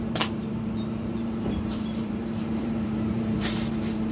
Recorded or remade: remade